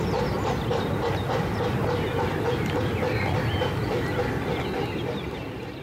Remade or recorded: recorded